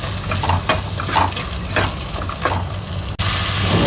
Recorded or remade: recorded